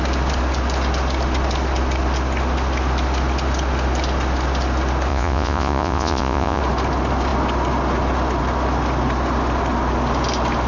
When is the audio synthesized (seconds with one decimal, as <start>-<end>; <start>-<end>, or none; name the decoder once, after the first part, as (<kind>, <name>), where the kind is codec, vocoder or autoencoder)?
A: 5.1-6.6 (vocoder, Vocos)